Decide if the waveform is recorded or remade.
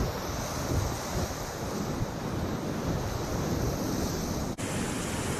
recorded